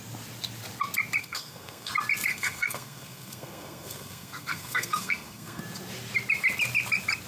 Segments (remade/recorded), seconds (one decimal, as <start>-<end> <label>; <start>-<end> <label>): 0.0-1.2 recorded; 1.2-1.9 remade; 1.9-2.3 recorded; 2.3-5.6 remade; 5.6-7.3 recorded